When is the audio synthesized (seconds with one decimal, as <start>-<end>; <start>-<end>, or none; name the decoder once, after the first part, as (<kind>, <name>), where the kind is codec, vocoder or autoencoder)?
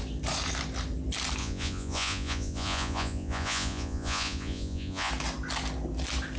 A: 1.4-5.1 (vocoder, Vocos)